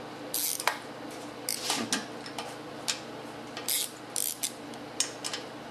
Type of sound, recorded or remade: recorded